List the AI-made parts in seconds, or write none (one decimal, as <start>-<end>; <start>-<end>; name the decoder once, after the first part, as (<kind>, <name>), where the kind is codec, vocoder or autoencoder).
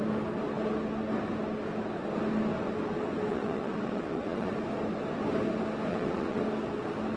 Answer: 3.3-4.5 (vocoder, Vocos); 5.9-6.4